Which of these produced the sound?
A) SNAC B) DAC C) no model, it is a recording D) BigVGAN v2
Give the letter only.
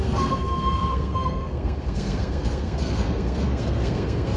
A